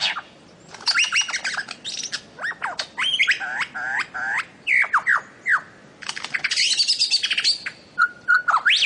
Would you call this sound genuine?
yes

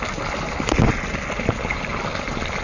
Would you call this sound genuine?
yes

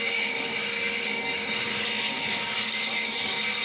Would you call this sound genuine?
no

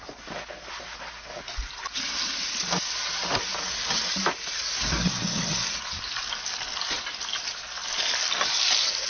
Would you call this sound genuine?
yes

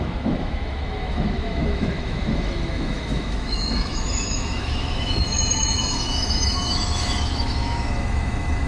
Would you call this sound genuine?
no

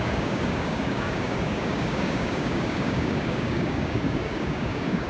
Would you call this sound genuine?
no